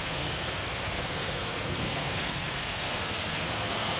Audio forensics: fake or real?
fake